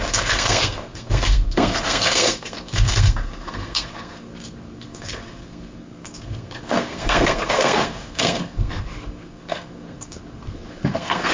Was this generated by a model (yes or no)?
yes